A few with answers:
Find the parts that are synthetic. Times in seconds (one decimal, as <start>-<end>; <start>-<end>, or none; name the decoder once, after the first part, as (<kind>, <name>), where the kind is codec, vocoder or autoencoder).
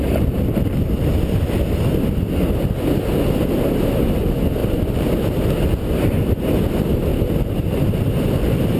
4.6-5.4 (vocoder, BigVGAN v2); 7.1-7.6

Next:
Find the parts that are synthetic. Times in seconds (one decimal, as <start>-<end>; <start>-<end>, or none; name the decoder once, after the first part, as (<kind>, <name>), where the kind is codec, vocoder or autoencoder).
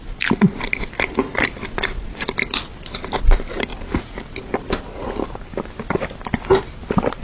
none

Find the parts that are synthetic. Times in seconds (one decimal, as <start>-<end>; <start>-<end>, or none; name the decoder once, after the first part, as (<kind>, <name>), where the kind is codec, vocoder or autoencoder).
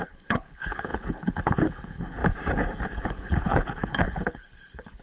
0.0-2.2 (codec, HILCodec); 2.8-5.0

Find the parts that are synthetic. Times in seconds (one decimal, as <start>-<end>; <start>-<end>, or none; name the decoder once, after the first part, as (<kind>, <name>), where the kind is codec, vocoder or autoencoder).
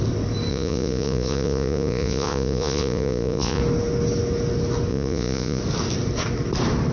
0.5-3.6 (vocoder, Vocos); 4.9-5.6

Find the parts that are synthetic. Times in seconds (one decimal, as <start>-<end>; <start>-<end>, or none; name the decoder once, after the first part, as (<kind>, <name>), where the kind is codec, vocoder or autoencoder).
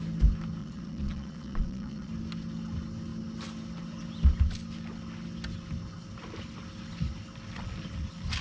0.6-2.1 (vocoder, Vocos)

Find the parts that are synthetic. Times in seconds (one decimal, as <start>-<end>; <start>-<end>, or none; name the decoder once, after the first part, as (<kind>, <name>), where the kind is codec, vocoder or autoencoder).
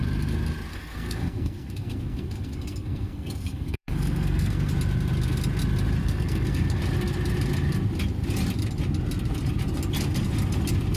0.7-4.7 (codec, SNAC); 6.0-6.8